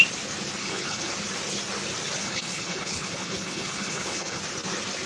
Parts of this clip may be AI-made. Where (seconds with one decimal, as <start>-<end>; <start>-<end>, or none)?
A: 0.6-1.1; 2.2-4.4